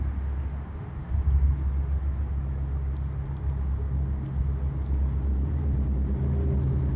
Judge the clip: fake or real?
real